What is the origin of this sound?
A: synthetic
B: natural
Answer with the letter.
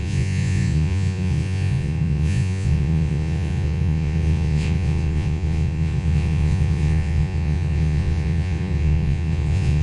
A